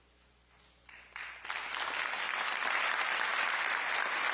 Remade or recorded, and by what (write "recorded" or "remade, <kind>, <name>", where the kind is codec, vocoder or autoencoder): recorded